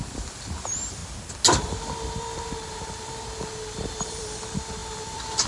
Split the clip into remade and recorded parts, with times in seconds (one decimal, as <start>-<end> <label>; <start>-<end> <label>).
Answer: 0.0-1.0 remade; 1.0-3.9 recorded; 3.9-5.5 remade